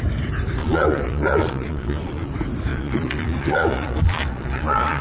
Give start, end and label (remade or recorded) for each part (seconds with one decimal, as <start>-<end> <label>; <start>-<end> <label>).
0.0-0.6 recorded; 0.6-2.3 remade; 2.3-2.7 recorded; 2.7-5.0 remade